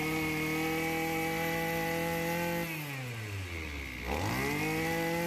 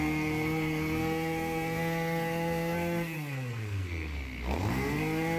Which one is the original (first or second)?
first